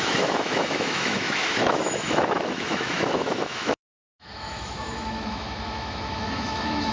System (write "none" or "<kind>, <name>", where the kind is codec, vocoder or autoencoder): autoencoder, DAC-VAE